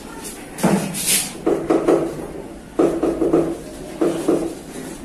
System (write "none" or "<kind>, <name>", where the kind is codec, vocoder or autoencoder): none